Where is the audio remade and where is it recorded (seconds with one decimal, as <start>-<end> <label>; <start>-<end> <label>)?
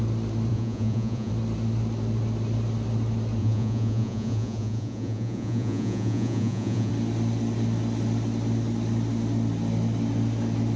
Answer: 0.0-0.5 recorded; 0.5-1.3 remade; 1.3-3.4 recorded; 3.4-6.9 remade; 6.9-10.8 recorded